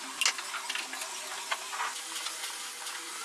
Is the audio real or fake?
real